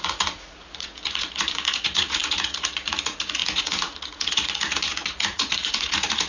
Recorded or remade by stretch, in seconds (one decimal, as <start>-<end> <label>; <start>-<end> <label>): 0.0-6.3 remade